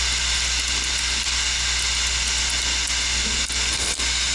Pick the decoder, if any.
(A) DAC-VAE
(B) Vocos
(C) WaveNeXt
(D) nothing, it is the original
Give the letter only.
D